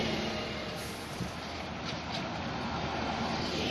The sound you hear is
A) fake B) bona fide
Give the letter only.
B